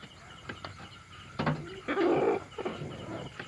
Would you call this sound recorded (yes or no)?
yes